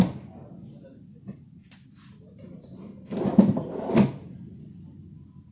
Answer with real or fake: real